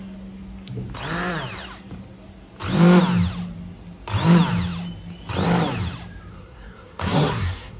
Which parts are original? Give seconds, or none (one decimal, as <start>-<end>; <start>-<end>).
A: 0.0-6.3